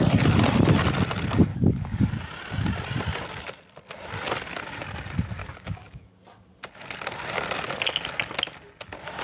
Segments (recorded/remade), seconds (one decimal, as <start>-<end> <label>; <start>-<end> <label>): 0.0-1.5 recorded; 1.5-2.1 remade; 2.1-5.4 recorded; 5.4-6.1 remade; 6.1-9.2 recorded